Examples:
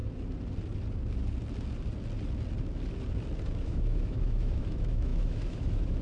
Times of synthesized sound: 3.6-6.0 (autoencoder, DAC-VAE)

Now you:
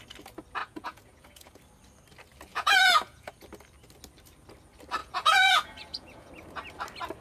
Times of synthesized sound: 0.6-1.6 (vocoder, Vocos); 2.5-3.3; 5.0-6.3

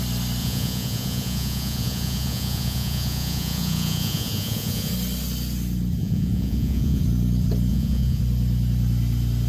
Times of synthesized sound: 0.4-4.9 (vocoder, Vocos); 6.0-7.0; 7.7-8.2